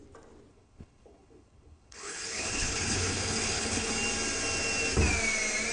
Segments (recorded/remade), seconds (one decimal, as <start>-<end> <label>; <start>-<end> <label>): 0.0-0.5 recorded; 0.5-3.9 remade; 3.9-5.7 recorded